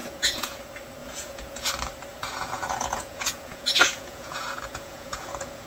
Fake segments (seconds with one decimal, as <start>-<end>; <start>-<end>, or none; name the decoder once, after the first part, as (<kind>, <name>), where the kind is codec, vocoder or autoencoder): 0.0-0.6 (vocoder, Vocos); 1.0-1.7; 2.1-5.7